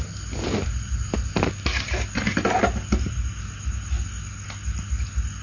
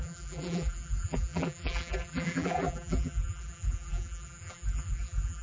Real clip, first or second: first